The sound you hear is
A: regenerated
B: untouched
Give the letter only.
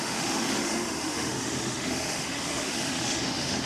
A